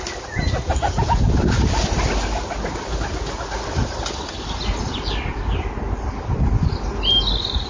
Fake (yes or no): no